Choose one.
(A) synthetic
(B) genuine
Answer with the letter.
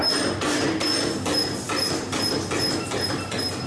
B